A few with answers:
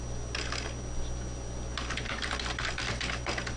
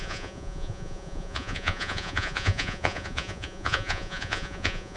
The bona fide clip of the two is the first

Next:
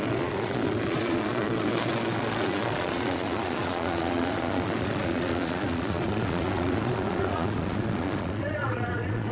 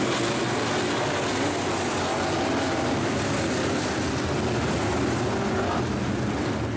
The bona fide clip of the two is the second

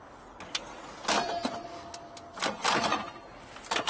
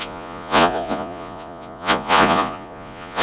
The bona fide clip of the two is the first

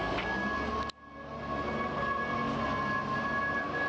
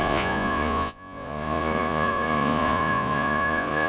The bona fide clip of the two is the first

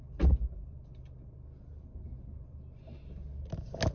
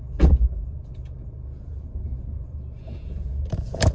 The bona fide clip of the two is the first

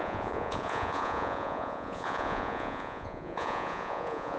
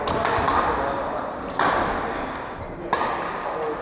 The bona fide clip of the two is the second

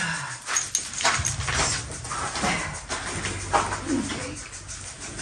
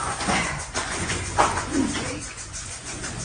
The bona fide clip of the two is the first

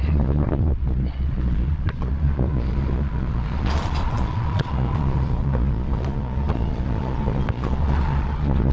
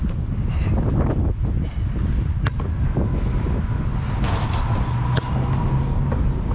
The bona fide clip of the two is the second